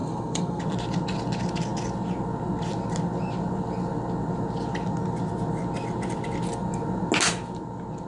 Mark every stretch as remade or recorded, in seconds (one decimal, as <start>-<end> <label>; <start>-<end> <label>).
0.0-0.6 remade; 0.6-8.1 recorded